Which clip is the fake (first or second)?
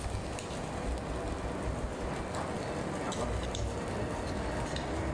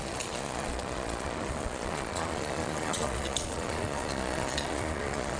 second